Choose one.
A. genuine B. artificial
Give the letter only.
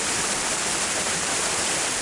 B